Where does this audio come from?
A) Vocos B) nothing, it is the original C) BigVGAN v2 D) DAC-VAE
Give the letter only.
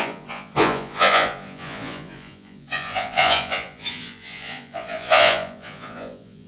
A